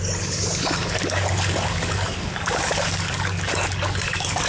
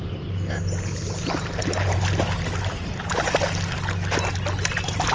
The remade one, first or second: first